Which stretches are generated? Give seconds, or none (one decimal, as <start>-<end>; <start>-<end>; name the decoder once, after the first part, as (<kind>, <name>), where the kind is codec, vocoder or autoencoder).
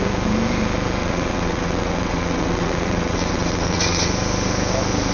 1.0-4.1 (vocoder, WaveNeXt)